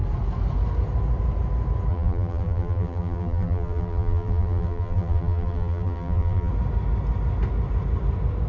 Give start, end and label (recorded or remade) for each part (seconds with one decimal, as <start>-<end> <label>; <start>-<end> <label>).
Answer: 0.0-1.9 recorded; 1.9-6.5 remade; 6.5-8.5 recorded